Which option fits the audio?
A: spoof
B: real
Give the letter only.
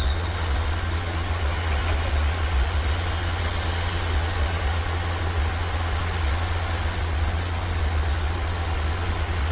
A